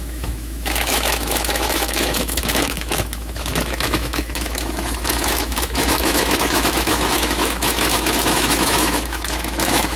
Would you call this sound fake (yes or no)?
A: yes